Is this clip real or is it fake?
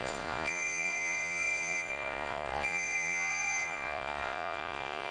fake